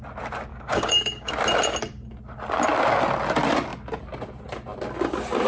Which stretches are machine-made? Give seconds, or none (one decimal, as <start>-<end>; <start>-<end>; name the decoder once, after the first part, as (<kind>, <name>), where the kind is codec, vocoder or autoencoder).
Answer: 0.5-1.3 (codec, DAC)